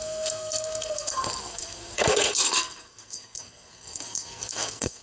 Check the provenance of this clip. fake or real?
fake